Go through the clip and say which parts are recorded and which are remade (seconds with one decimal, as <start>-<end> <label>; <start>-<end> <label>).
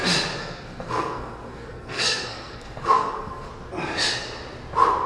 0.0-0.4 recorded; 0.4-3.5 remade; 3.5-5.1 recorded